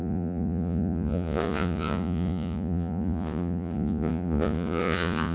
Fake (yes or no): yes